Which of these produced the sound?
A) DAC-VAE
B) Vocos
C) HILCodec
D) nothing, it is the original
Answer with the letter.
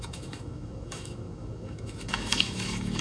A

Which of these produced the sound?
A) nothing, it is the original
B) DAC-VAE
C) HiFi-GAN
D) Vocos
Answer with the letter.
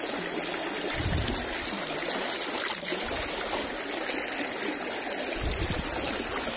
A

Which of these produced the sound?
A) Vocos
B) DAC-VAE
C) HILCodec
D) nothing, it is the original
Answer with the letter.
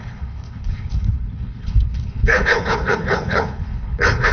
C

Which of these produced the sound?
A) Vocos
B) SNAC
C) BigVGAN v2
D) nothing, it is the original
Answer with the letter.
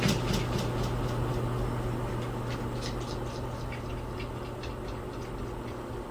D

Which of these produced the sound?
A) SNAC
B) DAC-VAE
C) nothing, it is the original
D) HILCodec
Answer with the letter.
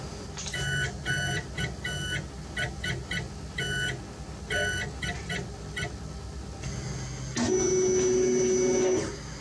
C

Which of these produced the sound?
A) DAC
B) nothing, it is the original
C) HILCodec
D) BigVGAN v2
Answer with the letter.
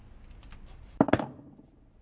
B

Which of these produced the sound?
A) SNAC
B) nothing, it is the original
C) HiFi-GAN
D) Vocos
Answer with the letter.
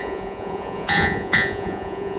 D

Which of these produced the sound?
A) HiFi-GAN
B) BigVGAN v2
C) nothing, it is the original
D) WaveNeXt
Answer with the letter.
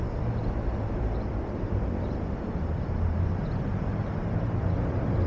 B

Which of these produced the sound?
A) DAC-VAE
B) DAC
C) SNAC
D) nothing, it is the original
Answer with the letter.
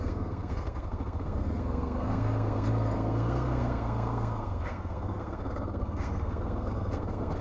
C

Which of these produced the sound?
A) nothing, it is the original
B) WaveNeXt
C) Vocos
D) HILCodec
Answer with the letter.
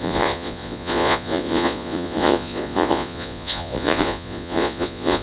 C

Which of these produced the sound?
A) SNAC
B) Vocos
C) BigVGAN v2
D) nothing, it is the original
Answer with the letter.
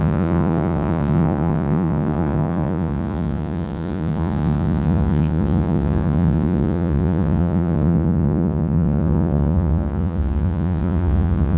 B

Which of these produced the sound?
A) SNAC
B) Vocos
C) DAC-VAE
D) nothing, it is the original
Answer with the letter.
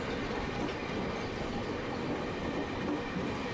D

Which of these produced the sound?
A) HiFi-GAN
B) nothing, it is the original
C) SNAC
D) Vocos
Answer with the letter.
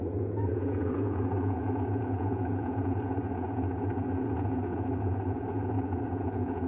D